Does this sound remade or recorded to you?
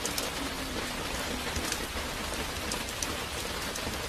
recorded